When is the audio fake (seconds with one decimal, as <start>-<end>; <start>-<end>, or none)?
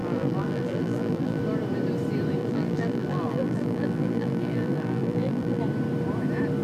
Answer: 0.0-1.4; 2.4-5.6